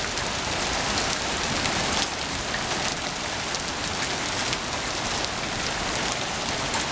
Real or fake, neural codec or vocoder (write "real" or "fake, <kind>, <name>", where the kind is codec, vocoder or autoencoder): real